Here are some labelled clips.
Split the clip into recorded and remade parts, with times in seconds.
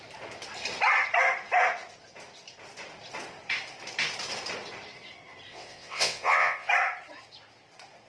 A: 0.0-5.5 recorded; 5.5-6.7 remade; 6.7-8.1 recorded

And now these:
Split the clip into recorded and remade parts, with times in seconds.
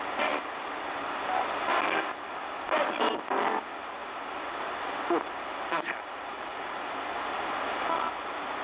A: 0.0-8.6 recorded